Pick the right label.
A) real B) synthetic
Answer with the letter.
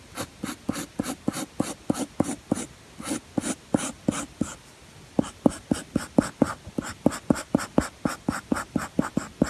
A